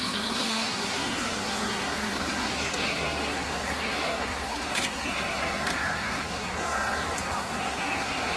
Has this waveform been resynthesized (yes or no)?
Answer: yes